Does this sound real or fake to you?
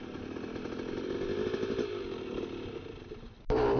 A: real